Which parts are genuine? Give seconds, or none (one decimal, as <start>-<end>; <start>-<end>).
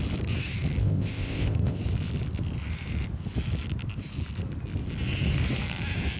0.0-0.8; 1.8-6.2